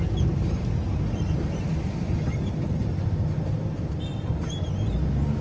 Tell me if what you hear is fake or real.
real